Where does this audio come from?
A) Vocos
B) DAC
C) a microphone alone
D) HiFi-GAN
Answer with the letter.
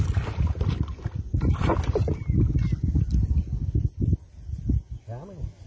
C